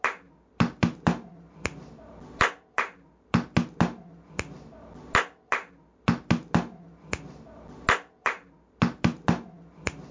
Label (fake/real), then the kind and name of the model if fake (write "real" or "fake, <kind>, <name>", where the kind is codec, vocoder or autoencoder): real